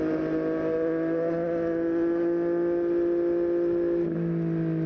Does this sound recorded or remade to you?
recorded